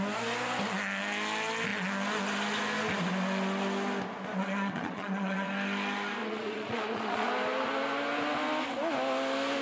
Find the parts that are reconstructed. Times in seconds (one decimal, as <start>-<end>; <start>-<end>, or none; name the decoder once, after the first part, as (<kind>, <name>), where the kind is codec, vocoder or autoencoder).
4.4-5.5 (vocoder, Vocos); 6.2-7.3